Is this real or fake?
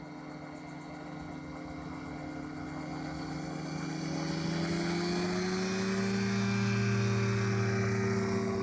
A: real